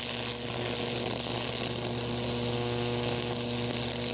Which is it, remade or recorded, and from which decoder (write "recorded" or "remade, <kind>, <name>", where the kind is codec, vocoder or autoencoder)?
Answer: recorded